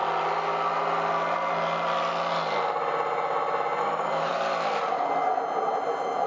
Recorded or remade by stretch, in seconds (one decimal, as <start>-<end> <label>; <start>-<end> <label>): 0.0-3.8 recorded; 3.8-4.3 remade; 4.3-5.8 recorded; 5.8-6.3 remade